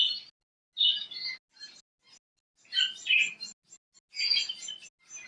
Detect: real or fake real